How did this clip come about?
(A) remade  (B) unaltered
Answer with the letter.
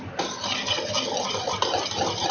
B